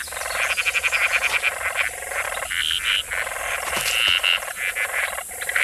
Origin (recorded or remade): recorded